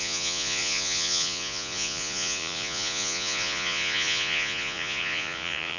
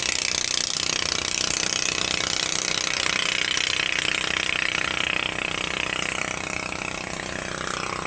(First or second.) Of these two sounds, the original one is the second